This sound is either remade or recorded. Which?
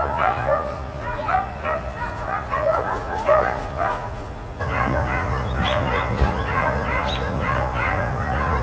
remade